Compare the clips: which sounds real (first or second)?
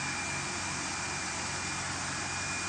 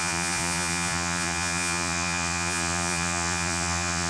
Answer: first